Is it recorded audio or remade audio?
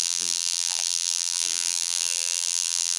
remade